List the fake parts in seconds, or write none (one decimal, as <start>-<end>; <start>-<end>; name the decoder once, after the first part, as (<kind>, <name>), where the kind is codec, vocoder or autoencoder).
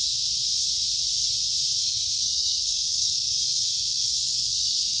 1.8-5.0 (codec, SNAC)